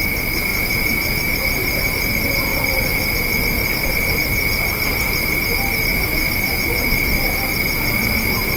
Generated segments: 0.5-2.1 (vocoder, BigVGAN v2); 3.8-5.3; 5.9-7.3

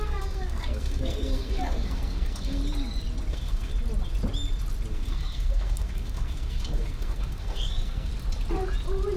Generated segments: 0.0-2.6 (codec, SNAC); 3.3-3.7; 4.9-8.1

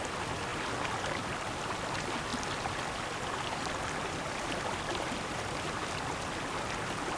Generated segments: 2.3-5.7 (vocoder, BigVGAN v2)

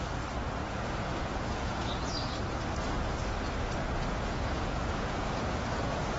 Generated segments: 0.6-2.5 (vocoder, Vocos); 3.8-5.8

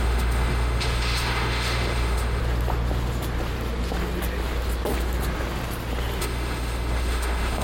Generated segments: 0.0-2.4 (autoencoder, DAC-VAE); 6.2-7.6

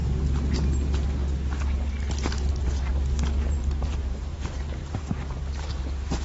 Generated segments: 2.5-2.9 (vocoder, BigVGAN v2); 3.5-6.2